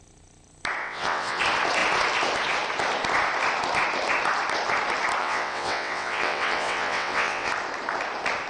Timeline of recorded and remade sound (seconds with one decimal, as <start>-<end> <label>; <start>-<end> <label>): 0.0-0.8 recorded; 0.8-1.4 remade; 1.4-5.2 recorded; 5.2-7.5 remade; 7.5-8.5 recorded